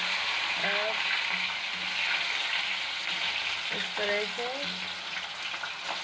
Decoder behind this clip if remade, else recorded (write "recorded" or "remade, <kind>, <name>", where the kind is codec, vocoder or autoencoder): recorded